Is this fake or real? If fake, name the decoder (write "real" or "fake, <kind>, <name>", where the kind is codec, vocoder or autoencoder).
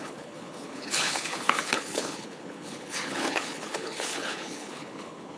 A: fake, codec, HILCodec